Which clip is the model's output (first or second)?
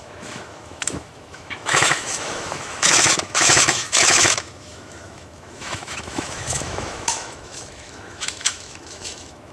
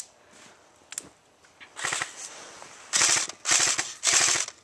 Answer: first